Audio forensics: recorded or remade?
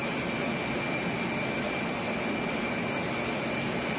recorded